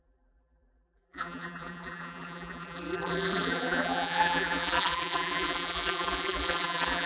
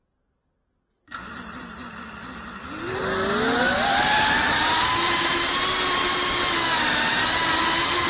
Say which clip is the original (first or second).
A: second